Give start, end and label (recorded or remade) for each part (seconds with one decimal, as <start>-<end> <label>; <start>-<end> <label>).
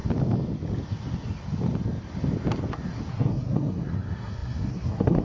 0.0-3.1 recorded; 3.1-5.2 remade